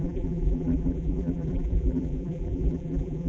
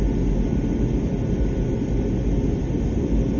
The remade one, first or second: first